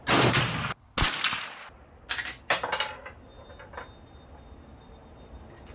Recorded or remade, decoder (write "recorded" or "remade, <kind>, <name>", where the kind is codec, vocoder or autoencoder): recorded